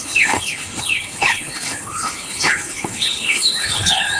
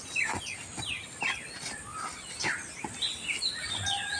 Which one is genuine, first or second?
second